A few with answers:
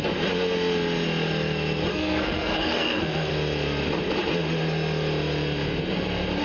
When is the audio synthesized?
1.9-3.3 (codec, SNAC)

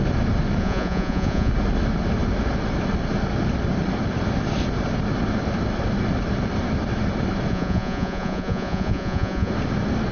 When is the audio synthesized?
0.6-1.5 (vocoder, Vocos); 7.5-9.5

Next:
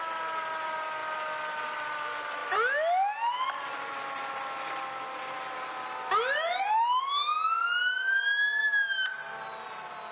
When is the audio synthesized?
none

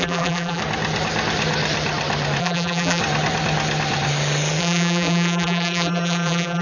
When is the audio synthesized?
0.0-0.6 (vocoder, BigVGAN v2); 2.4-3.0; 4.6-6.6

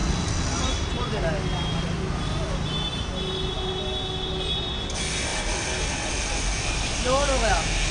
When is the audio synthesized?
none

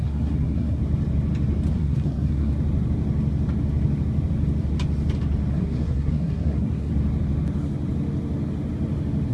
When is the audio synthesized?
0.0-0.8 (codec, SNAC); 1.7-2.5; 5.5-6.9

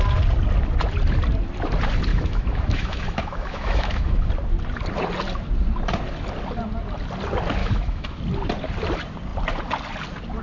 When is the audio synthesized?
2.1-4.3 (autoencoder, DAC-VAE); 7.6-8.2

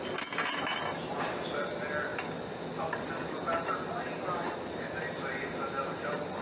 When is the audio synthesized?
none